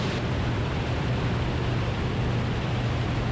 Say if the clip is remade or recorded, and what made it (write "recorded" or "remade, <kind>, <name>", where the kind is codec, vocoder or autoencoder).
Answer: remade, vocoder, BigVGAN v2